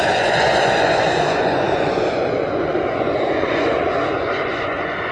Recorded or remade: remade